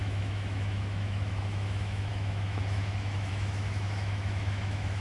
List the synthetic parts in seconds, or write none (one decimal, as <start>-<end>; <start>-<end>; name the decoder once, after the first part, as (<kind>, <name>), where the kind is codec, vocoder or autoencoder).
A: 0.0-5.0 (autoencoder, DAC-VAE)